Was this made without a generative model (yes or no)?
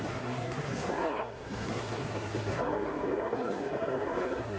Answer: no